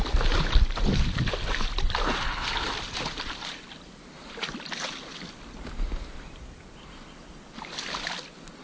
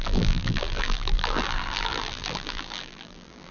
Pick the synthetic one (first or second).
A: second